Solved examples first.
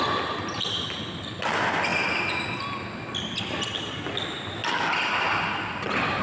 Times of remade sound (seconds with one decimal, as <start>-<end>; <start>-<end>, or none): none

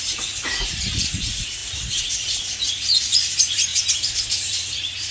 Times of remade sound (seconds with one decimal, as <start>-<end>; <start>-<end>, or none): 0.0-5.1

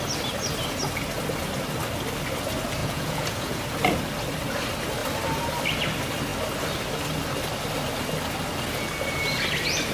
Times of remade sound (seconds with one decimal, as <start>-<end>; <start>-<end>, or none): 2.8-3.6